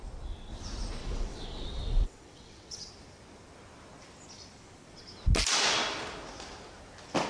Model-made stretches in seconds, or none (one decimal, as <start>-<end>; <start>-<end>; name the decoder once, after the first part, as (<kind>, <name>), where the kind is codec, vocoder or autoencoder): 1.0-2.9 (vocoder, WaveNeXt)